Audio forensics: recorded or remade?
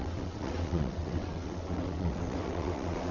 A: remade